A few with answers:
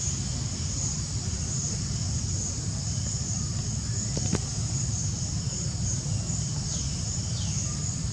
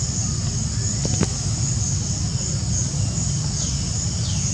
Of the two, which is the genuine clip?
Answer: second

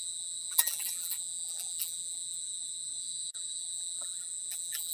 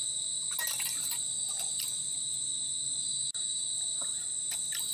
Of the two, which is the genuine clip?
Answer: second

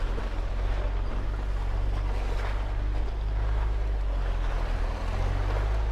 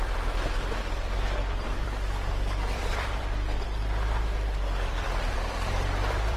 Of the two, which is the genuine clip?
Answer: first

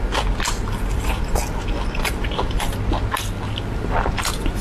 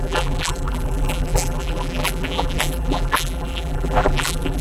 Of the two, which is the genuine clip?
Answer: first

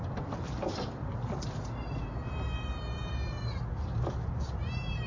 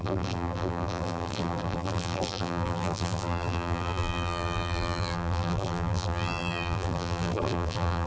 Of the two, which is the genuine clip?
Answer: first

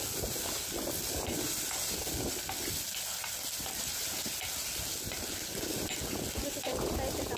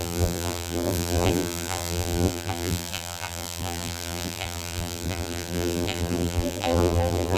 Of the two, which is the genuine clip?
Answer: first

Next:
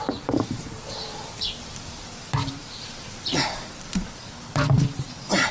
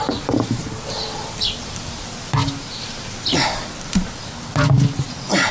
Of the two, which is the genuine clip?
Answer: second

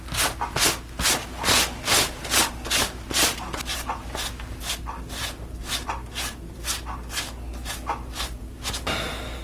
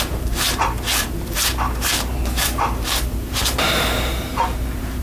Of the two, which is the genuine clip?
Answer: first